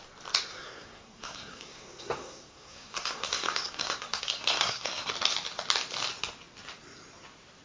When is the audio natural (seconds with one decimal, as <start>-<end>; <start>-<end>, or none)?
0.0-0.5; 5.1-7.6